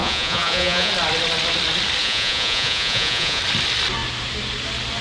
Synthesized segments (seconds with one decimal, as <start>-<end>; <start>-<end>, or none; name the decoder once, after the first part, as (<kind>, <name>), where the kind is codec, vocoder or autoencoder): 0.0-0.9 (vocoder, Vocos); 2.0-3.4